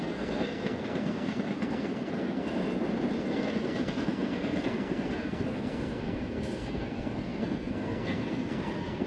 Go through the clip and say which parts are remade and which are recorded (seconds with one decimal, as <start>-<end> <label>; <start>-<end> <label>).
0.0-2.6 remade; 2.6-3.2 recorded; 3.2-9.1 remade